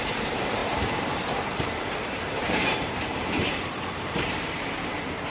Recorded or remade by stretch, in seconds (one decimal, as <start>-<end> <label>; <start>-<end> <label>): 0.0-5.3 remade